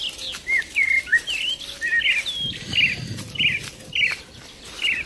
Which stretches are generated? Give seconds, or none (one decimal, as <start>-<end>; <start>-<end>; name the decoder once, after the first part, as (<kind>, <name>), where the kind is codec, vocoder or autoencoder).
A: none